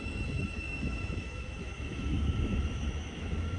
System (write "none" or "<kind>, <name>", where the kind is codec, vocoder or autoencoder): autoencoder, DAC-VAE